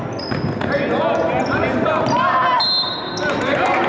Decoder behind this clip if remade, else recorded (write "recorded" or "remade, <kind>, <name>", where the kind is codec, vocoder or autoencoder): recorded